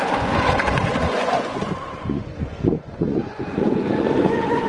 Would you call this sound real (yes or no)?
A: no